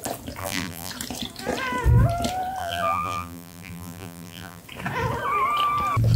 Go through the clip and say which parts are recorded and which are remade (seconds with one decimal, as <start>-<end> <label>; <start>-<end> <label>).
0.0-0.4 recorded; 0.4-0.9 remade; 0.9-2.6 recorded; 2.6-4.6 remade; 4.6-6.2 recorded